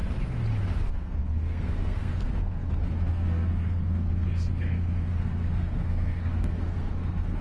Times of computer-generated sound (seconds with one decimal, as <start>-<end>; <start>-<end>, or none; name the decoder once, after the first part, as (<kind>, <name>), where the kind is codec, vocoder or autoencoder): 0.9-7.4 (codec, SNAC)